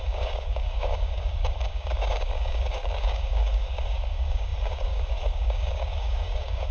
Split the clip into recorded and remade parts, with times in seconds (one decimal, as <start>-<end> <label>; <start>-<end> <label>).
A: 0.0-6.7 remade